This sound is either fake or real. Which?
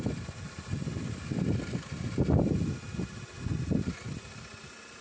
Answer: real